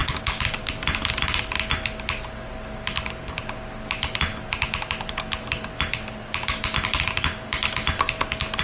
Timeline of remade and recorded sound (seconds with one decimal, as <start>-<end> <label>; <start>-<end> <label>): 0.0-8.6 recorded

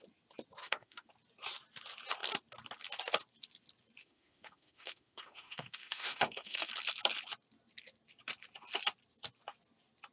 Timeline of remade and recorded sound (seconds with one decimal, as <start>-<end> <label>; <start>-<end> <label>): 0.0-0.6 recorded; 0.6-1.1 remade; 1.1-4.0 recorded; 4.0-6.7 remade; 6.7-10.1 recorded

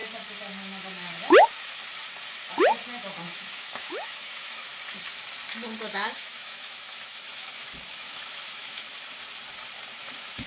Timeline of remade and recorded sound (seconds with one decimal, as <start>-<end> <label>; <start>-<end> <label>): 0.0-3.0 recorded; 3.0-4.7 remade; 4.7-5.8 recorded; 5.8-8.9 remade; 8.9-9.9 recorded; 9.9-10.5 remade

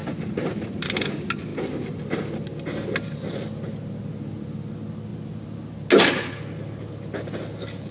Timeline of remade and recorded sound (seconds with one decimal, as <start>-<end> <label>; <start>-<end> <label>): 0.0-7.9 recorded